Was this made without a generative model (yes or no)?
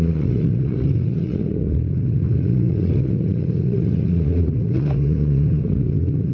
no